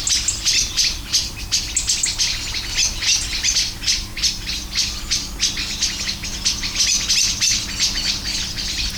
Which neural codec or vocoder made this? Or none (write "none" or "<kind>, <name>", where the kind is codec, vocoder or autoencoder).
none